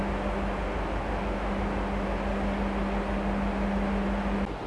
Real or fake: real